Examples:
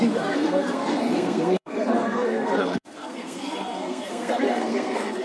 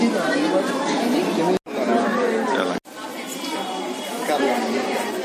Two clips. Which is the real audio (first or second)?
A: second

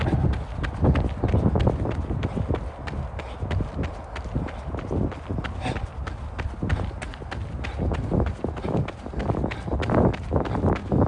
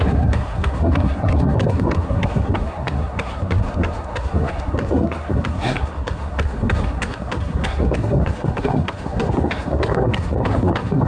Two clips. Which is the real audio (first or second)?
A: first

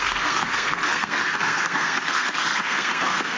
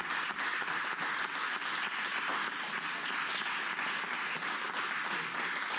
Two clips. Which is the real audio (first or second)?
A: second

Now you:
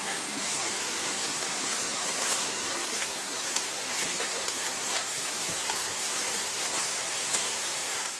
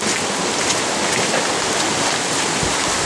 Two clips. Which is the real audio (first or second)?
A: second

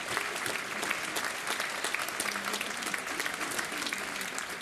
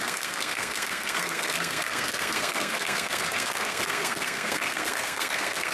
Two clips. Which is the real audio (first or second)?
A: first